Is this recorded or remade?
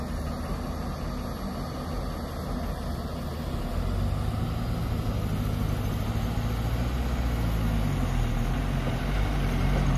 recorded